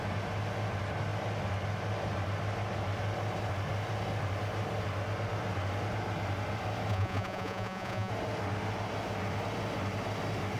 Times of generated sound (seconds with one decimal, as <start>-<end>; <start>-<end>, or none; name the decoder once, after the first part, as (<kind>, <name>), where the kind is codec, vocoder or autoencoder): 6.9-8.1 (vocoder, Vocos)